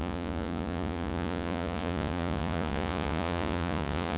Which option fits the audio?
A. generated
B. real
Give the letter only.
A